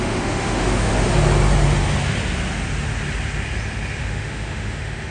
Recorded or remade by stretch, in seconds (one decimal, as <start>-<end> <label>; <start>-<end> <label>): 0.0-0.9 remade; 0.9-4.0 recorded; 4.0-5.1 remade